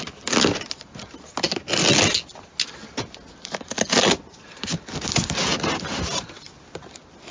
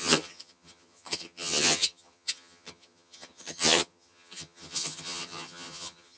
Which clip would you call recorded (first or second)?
first